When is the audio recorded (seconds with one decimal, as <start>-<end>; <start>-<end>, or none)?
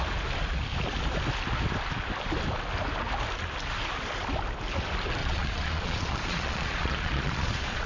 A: 0.0-5.2